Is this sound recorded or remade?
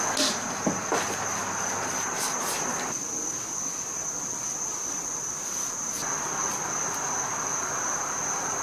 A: recorded